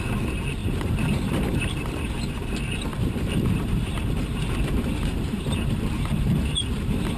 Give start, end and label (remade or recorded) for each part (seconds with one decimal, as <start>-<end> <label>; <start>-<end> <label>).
0.0-0.6 recorded; 0.6-2.3 remade; 2.3-2.9 recorded; 2.9-7.2 remade